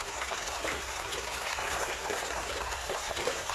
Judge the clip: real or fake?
fake